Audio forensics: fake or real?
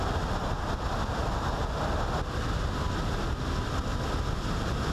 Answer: real